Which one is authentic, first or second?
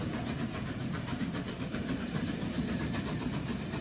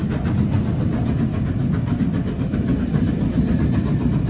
second